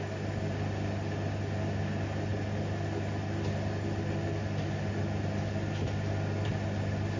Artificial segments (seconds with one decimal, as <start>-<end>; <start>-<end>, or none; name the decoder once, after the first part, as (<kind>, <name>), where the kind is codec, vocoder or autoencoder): none